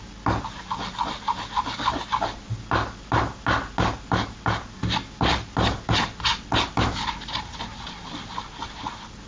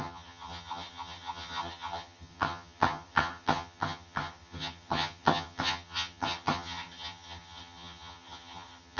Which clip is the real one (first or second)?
first